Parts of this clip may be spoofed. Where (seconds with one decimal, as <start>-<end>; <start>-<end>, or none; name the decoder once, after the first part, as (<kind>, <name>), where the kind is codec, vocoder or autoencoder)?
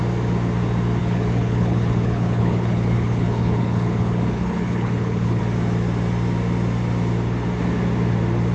1.0-5.4 (codec, HILCodec)